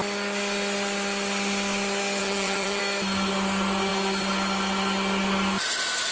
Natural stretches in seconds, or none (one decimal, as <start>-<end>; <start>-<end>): 0.0-2.2; 2.8-6.1